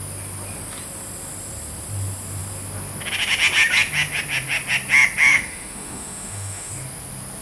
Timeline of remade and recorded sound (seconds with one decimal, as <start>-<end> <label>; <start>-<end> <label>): 0.0-5.3 recorded; 5.3-6.7 remade; 6.7-7.4 recorded